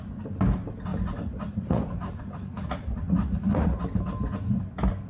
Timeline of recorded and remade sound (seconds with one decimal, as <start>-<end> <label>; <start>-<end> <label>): 0.0-0.9 recorded; 0.9-3.8 remade; 3.8-5.1 recorded